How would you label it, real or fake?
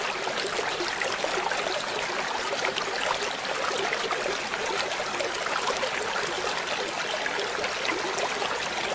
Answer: real